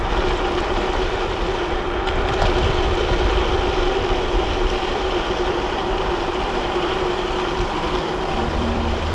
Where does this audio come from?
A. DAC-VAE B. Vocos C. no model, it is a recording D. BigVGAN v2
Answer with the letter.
D